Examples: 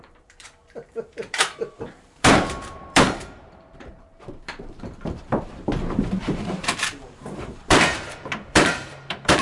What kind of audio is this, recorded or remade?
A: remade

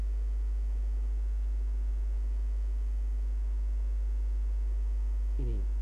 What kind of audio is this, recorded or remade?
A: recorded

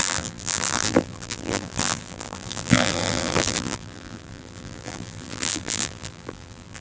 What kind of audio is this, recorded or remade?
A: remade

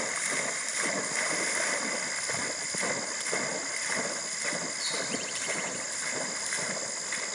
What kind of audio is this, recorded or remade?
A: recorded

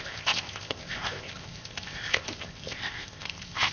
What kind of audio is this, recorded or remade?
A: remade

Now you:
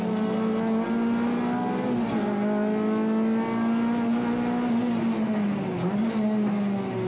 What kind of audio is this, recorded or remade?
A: recorded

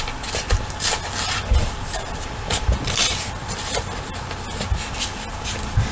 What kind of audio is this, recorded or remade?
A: recorded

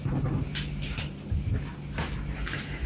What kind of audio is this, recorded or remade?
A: recorded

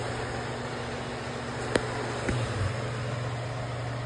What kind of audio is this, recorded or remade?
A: recorded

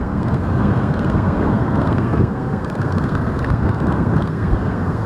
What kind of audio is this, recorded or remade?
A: remade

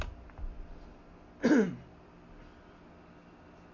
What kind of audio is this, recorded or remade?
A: recorded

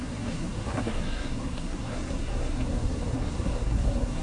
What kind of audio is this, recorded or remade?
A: remade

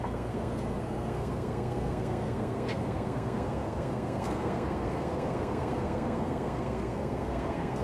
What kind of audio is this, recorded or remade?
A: remade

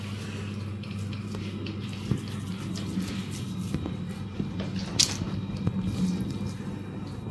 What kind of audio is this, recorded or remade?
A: recorded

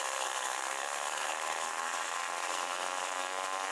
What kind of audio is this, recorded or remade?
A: remade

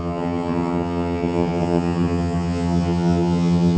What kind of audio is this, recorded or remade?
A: remade